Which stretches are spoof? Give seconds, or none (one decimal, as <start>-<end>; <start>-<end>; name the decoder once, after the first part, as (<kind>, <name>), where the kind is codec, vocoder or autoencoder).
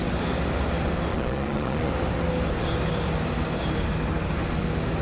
1.1-1.9 (vocoder, Vocos)